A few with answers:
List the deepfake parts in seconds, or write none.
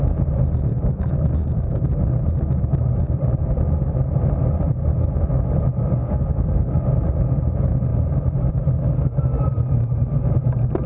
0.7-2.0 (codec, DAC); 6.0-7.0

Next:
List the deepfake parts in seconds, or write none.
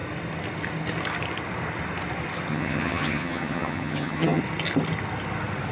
2.5-4.4 (vocoder, HiFi-GAN)